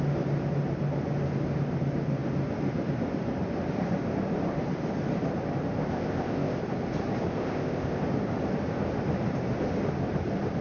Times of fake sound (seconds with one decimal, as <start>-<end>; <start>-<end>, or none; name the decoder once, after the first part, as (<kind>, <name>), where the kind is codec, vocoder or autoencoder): 5.9-6.6 (codec, ZipCodec); 7.3-8.0